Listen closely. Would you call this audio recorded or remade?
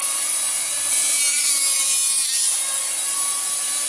remade